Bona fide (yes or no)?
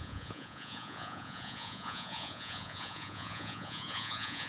no